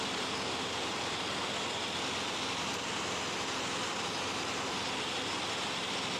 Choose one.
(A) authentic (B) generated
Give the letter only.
A